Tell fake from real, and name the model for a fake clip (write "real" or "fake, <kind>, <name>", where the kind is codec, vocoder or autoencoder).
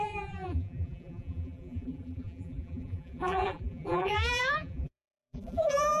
fake, vocoder, BigVGAN v2